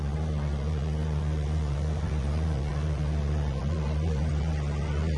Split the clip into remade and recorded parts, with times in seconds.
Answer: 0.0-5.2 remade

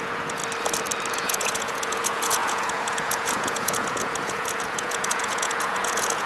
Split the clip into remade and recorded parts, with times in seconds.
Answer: 0.0-0.4 remade; 0.4-1.1 recorded; 1.1-6.3 remade

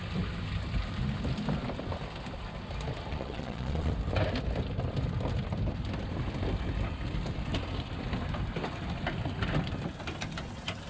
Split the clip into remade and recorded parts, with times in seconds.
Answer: 0.0-3.1 recorded; 3.1-3.9 remade; 3.9-10.9 recorded

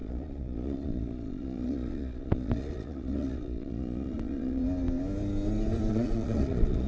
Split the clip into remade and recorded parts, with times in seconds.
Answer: 0.0-4.6 remade; 4.6-5.9 recorded; 5.9-6.9 remade

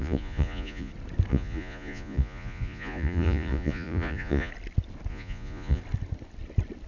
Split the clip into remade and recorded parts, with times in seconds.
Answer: 0.0-0.9 remade; 0.9-1.3 recorded; 1.3-4.5 remade; 4.5-5.1 recorded; 5.1-5.8 remade; 5.8-6.9 recorded

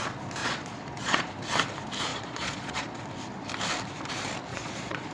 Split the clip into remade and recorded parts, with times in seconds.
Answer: 0.0-0.4 recorded; 0.4-1.3 remade; 1.3-2.1 recorded; 2.1-3.0 remade; 3.0-4.5 recorded; 4.5-5.1 remade

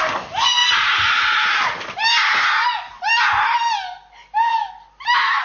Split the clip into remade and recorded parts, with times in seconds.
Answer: 0.0-5.4 recorded